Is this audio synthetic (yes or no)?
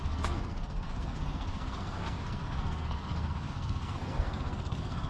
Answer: yes